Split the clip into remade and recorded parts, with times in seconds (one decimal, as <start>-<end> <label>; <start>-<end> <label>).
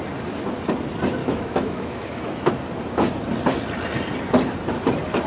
0.0-1.2 recorded; 1.2-2.5 remade; 2.5-5.3 recorded